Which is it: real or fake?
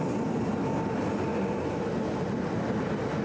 real